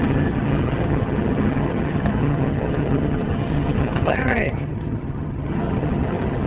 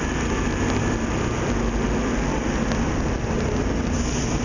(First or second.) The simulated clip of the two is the first